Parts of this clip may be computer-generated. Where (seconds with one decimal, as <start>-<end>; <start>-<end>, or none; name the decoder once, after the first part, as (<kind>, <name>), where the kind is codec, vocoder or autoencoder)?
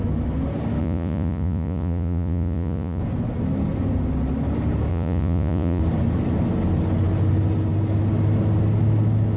0.8-3.0 (vocoder, Vocos); 4.9-5.8